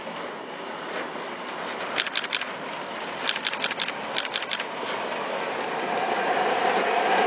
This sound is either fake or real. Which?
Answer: real